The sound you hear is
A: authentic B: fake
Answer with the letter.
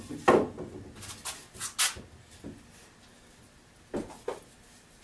A